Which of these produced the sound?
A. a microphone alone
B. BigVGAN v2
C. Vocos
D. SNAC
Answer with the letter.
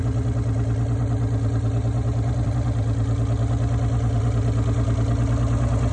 A